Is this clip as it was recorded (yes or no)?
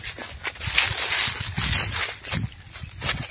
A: yes